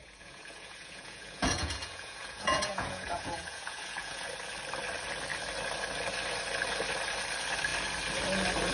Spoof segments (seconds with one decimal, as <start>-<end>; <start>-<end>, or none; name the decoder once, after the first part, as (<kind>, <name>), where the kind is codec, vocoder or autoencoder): 0.0-4.3 (vocoder, Vocos)